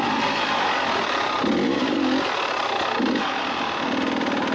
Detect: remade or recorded recorded